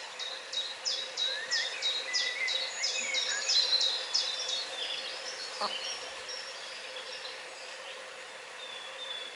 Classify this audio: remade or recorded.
remade